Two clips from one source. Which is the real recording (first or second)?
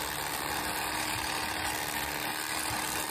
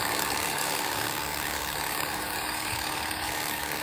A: first